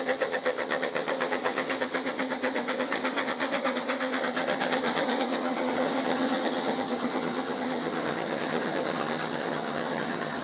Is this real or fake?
fake